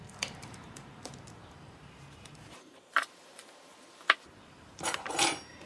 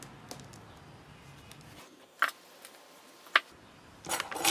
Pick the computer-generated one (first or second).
first